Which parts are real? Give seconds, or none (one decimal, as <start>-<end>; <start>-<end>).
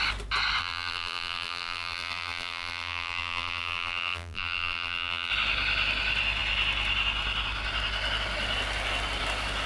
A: 0.0-0.6; 5.3-9.7